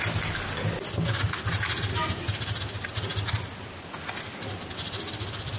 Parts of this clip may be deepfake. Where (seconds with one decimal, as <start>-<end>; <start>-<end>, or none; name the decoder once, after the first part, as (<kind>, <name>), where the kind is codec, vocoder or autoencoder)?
none